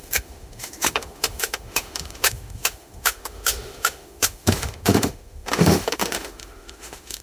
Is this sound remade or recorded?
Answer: remade